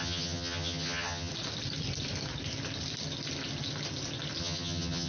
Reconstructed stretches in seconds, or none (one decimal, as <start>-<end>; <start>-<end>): 0.0-1.3; 4.4-5.1